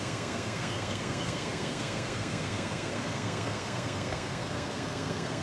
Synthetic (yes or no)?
yes